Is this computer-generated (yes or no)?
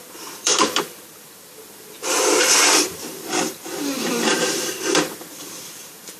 yes